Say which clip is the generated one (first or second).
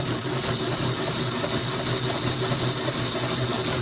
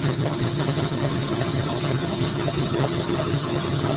second